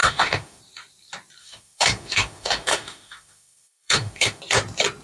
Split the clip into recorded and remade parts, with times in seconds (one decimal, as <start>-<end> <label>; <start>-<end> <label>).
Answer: 0.0-0.6 remade; 0.6-1.4 recorded; 1.4-4.4 remade; 4.4-5.0 recorded